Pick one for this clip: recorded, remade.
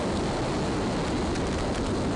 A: recorded